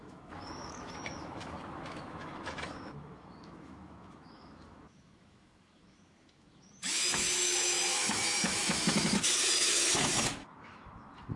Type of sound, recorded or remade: remade